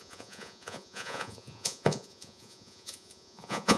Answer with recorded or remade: remade